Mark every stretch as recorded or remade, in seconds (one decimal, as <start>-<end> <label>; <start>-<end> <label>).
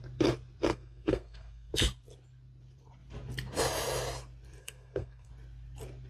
0.0-0.7 recorded; 0.7-1.7 remade; 1.7-4.6 recorded; 4.6-5.3 remade; 5.3-6.1 recorded